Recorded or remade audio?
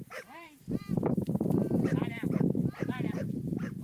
remade